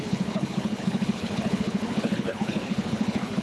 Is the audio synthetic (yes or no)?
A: yes